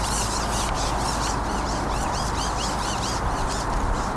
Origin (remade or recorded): recorded